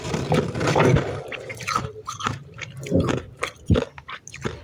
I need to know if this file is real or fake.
real